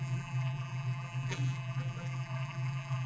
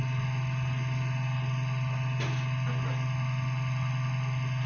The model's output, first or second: first